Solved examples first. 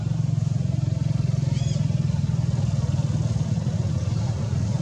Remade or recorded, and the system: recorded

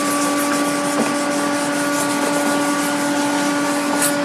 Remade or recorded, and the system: recorded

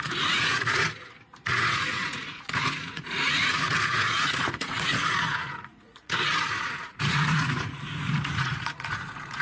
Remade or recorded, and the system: remade, vocoder, Vocos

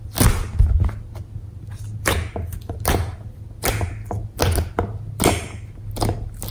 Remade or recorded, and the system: recorded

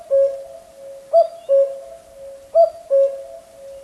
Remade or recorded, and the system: recorded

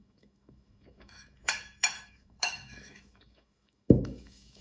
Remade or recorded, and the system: remade, autoencoder, DAC-VAE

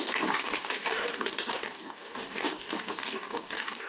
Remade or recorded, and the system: remade, codec, DAC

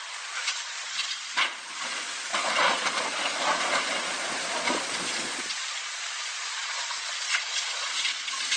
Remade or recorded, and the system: remade, vocoder, Vocos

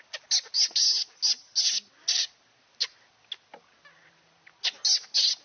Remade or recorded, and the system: recorded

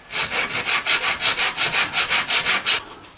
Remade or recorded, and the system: recorded